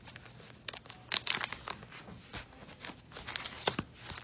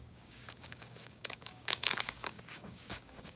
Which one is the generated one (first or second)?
second